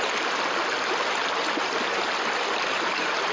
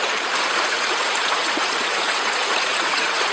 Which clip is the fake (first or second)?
second